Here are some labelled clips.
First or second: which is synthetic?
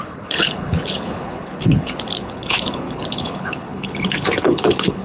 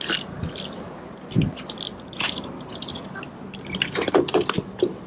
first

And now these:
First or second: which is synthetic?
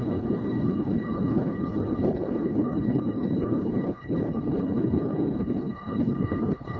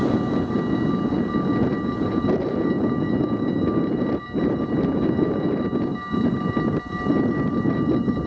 first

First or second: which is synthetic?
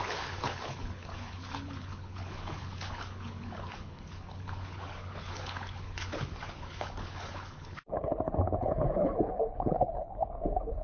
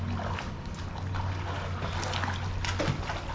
first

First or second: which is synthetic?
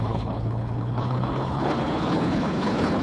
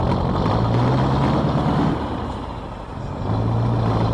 first